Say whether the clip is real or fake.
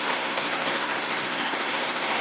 fake